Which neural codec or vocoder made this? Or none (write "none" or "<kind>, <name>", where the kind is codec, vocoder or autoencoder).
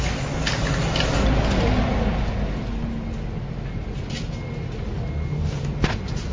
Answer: none